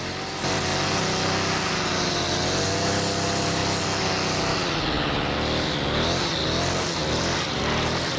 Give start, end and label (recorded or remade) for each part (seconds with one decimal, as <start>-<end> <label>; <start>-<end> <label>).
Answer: 0.0-8.2 recorded